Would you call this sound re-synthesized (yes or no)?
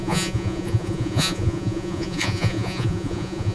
yes